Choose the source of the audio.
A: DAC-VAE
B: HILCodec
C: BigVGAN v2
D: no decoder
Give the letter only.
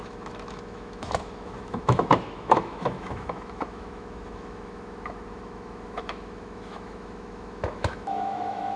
A